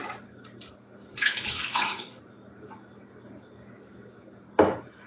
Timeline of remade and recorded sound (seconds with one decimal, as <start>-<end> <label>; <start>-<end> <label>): 0.0-1.1 recorded; 1.1-2.2 remade; 2.2-5.1 recorded